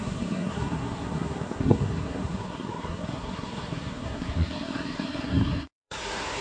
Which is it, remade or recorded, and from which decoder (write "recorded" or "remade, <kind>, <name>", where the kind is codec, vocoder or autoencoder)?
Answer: remade, codec, SNAC